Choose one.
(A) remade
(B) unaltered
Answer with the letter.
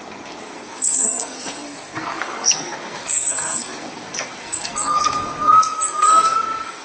A